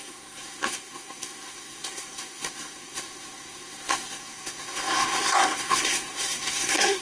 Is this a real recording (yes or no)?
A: no